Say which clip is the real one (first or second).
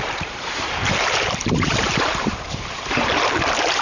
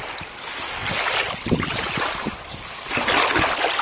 second